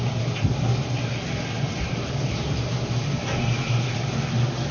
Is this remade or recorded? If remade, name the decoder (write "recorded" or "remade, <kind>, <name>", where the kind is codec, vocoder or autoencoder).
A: recorded